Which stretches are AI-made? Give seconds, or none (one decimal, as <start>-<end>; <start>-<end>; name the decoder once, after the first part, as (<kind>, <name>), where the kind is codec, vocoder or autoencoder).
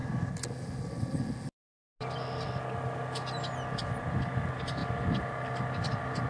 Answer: none